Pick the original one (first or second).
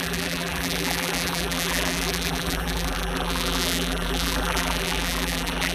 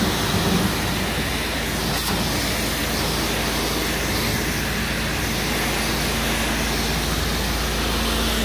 second